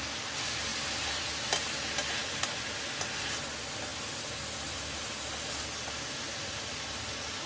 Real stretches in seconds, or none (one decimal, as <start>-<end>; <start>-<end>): 0.0-7.5